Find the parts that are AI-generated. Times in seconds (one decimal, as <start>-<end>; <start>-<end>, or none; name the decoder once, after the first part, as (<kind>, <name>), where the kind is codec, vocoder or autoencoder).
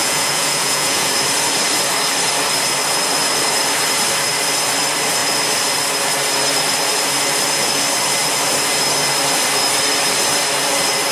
0.0-1.1 (vocoder, Vocos)